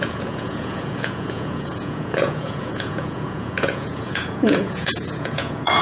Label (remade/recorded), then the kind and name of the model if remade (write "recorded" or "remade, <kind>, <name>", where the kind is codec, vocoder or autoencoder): remade, vocoder, Vocos